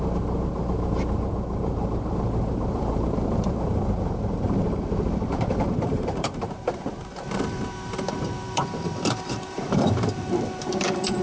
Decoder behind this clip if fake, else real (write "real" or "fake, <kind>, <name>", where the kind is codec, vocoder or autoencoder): fake, vocoder, BigVGAN v2